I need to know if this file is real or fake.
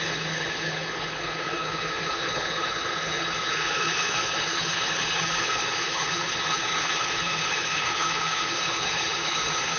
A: fake